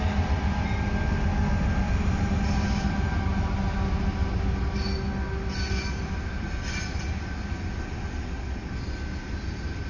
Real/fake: real